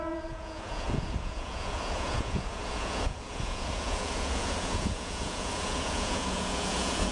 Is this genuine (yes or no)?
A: no